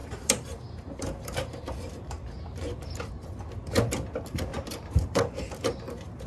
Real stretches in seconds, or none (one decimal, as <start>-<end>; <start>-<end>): 3.1-4.5; 5.5-6.3